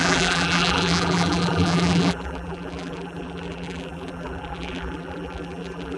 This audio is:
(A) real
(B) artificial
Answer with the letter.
B